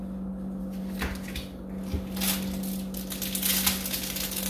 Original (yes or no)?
yes